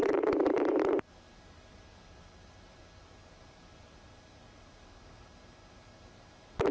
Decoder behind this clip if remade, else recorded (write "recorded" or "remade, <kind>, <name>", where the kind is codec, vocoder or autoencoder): remade, vocoder, BigVGAN v2